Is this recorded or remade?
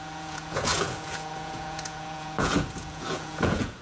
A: remade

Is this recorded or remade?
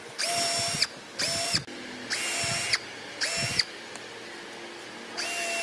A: recorded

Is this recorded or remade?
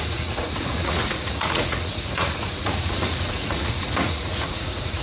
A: remade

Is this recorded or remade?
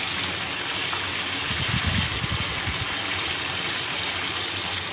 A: remade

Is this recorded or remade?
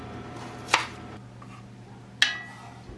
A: recorded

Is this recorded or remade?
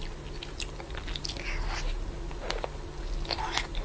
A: recorded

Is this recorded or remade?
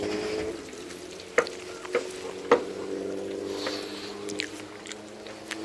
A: recorded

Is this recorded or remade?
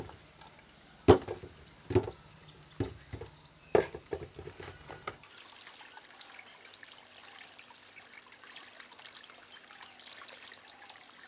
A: recorded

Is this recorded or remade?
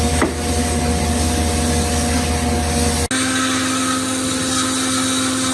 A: recorded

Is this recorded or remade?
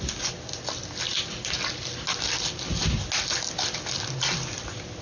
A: recorded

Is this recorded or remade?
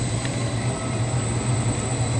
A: recorded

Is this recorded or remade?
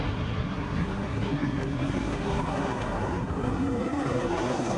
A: remade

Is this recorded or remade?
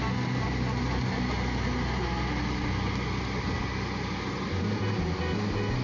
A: recorded